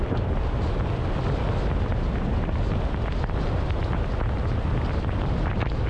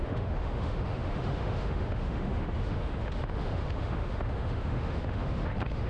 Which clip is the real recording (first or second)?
first